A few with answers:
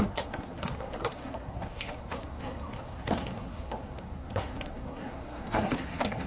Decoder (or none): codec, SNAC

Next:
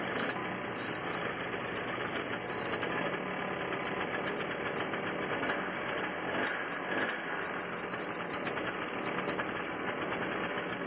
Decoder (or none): none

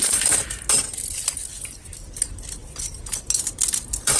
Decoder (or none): none